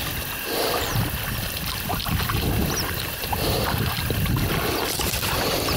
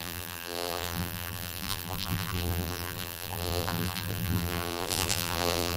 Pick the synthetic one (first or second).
second